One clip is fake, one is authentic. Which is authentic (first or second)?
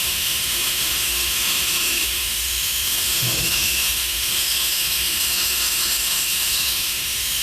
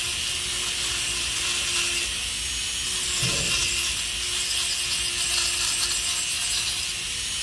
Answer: second